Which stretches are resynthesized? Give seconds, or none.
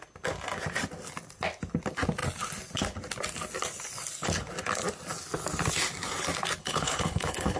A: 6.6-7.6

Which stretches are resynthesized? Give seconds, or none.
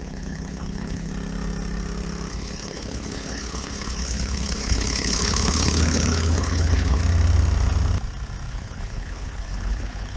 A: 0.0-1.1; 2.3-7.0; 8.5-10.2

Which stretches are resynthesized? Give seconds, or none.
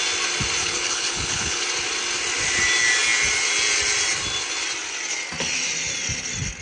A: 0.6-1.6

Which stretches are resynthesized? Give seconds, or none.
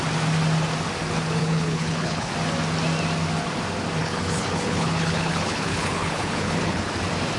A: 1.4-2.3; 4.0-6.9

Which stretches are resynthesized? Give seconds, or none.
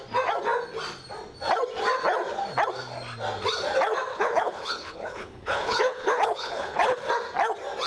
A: 4.1-7.1